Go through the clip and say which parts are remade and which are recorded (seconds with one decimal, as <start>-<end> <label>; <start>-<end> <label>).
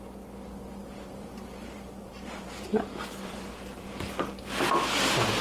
0.0-0.8 recorded; 0.8-4.0 remade; 4.0-5.4 recorded